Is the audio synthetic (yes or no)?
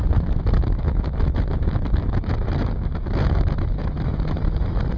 yes